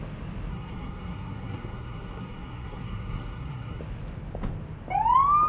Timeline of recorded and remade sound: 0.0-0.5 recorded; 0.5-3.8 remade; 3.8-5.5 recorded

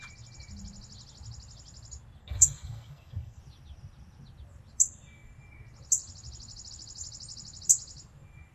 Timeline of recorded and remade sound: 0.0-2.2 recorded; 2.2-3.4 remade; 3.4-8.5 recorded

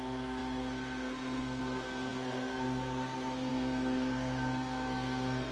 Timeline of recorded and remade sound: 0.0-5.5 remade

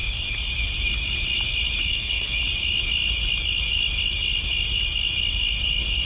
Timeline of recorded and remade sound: 0.0-1.9 recorded; 1.9-2.4 remade; 2.4-6.0 recorded

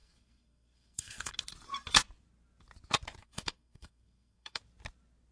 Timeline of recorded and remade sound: 0.0-1.3 remade; 1.3-3.2 recorded; 3.2-4.6 remade; 4.6-5.3 recorded

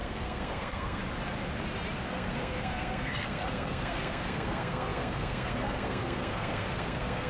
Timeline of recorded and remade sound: 0.0-1.0 remade; 1.0-2.1 recorded; 2.1-7.3 remade

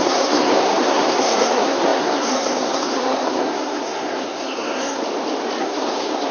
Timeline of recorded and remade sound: 0.0-5.0 remade; 5.0-5.6 recorded; 5.6-6.3 remade